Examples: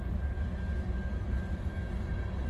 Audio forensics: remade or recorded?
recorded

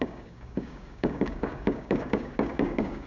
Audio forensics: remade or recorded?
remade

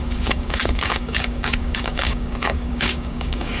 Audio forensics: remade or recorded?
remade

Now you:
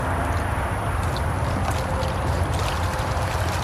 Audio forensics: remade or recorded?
recorded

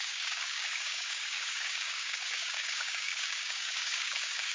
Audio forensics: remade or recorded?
remade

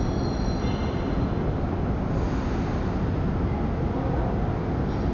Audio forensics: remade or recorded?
recorded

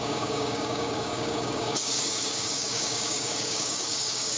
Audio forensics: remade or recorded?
remade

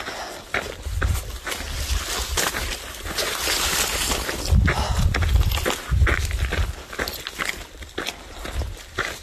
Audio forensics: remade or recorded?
recorded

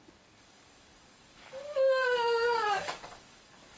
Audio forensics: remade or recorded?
remade